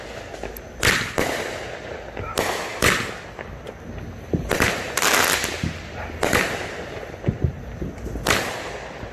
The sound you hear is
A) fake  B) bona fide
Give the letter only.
B